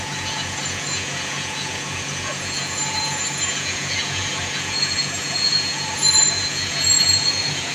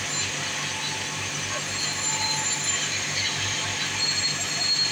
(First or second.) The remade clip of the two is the first